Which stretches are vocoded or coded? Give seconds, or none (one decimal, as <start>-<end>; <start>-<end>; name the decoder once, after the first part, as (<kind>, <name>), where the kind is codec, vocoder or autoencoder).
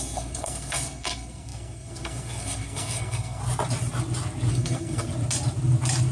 0.0-3.4 (codec, SNAC); 4.5-5.1